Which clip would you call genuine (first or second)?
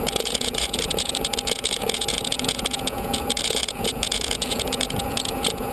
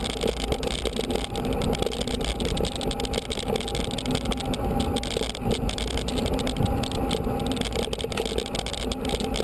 second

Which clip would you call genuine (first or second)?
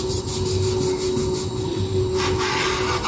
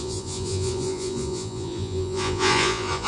first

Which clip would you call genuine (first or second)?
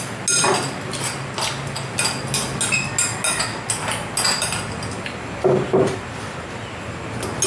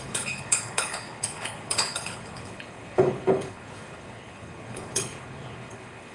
first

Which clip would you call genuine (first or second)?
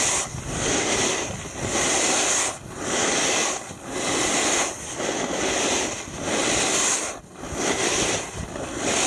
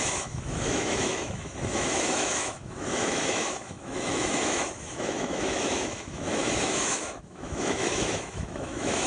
first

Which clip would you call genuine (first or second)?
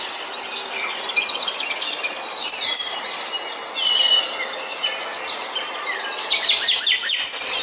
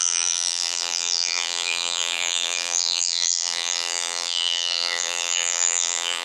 first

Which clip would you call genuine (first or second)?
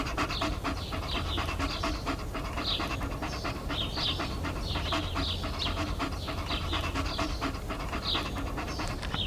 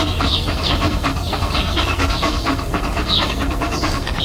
first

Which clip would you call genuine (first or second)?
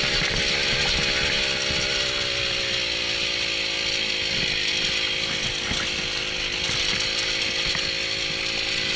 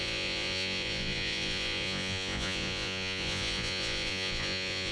first